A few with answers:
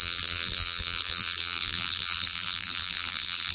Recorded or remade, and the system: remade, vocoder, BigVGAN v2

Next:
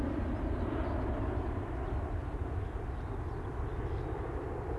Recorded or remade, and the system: recorded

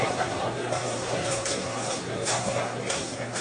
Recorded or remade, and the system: remade, codec, SNAC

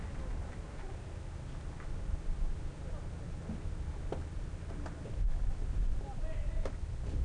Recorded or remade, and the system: recorded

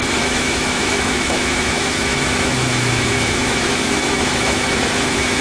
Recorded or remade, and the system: remade, autoencoder, DAC-VAE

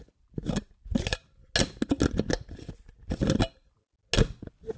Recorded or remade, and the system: recorded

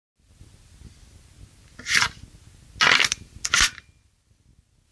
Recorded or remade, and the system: recorded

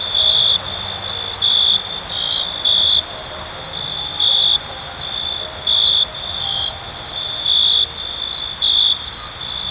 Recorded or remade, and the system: remade, vocoder, BigVGAN v2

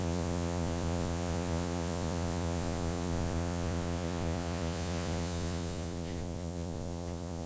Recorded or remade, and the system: remade, vocoder, Vocos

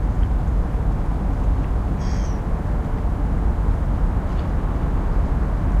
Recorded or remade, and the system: recorded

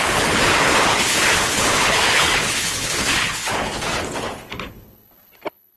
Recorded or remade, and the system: remade, codec, HILCodec